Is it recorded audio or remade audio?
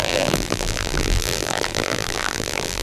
remade